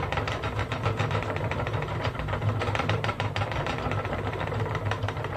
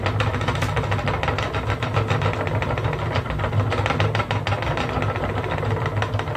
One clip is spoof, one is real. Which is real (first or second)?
second